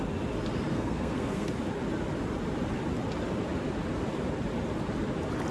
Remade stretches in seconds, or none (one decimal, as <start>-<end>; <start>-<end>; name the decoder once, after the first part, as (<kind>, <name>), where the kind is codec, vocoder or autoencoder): 0.7-1.5 (codec, SNAC)